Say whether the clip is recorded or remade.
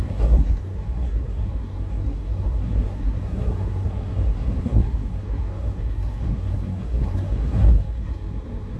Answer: remade